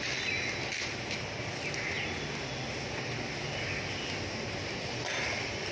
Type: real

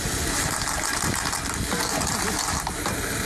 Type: real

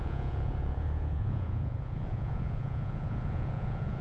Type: fake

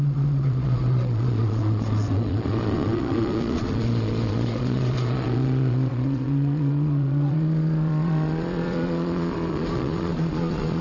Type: fake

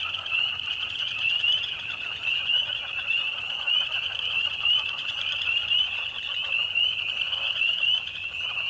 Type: fake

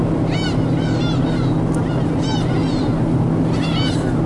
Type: real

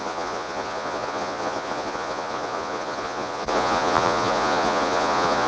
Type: fake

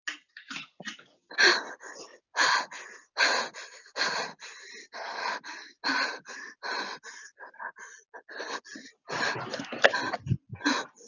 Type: real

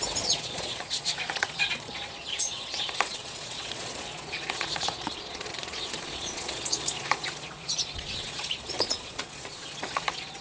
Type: fake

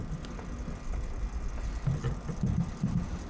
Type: real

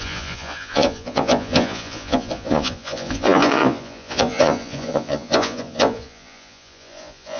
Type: fake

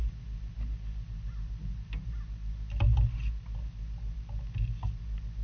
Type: real